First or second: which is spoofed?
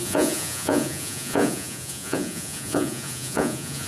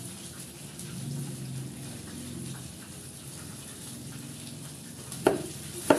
first